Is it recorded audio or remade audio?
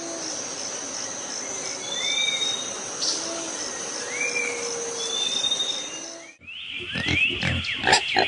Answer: recorded